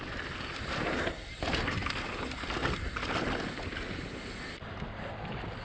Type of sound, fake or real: real